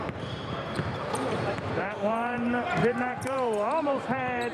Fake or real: fake